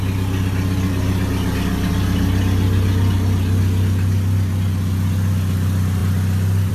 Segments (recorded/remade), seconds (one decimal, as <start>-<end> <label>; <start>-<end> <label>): 0.0-6.7 recorded